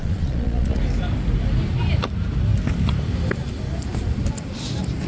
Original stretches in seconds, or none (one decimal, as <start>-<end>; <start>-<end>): 0.8-5.1